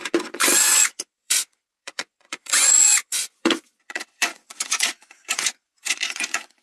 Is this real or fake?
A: fake